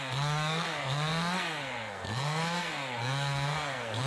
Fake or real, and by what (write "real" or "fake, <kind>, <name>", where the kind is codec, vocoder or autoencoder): fake, codec, SNAC